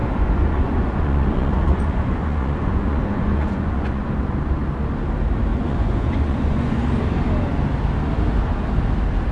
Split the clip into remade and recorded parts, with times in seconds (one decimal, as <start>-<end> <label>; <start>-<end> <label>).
0.0-4.1 remade; 4.1-5.5 recorded; 5.5-6.8 remade; 6.8-9.3 recorded